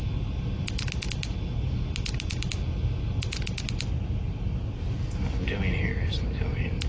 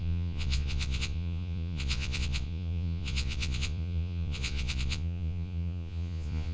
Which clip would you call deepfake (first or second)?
second